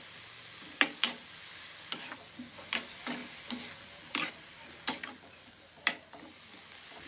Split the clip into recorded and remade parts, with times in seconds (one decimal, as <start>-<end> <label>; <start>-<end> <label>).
0.0-7.1 recorded